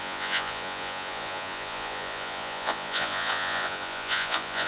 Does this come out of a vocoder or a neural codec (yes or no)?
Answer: yes